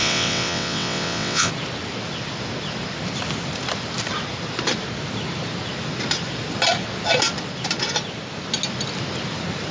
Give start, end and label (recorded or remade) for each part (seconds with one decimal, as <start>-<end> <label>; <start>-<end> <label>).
0.0-1.5 remade; 1.5-9.7 recorded